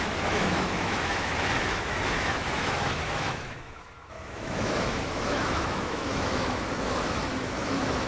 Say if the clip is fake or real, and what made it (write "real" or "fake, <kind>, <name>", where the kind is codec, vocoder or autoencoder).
fake, autoencoder, DAC-VAE